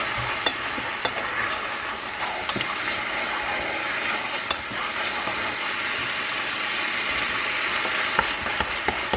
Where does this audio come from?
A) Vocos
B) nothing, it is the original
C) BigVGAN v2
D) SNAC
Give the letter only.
B